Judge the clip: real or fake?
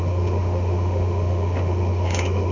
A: fake